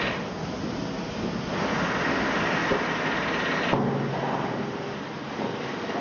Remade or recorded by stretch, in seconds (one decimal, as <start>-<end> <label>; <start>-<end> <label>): 0.0-6.0 recorded